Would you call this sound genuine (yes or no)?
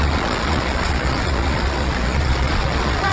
no